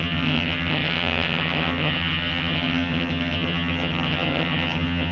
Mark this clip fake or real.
fake